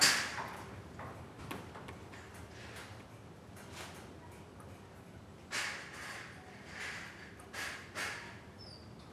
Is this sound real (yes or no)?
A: yes